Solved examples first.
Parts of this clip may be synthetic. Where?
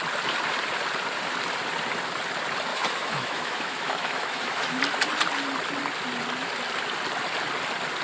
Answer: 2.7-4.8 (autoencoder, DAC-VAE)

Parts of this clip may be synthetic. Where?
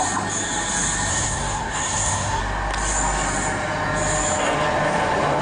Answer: 1.1-2.4 (codec, SNAC)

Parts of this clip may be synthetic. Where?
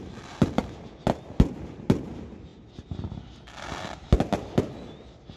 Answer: none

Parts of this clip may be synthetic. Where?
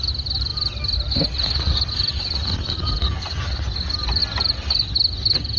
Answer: 2.1-3.4 (vocoder, BigVGAN v2); 4.2-4.9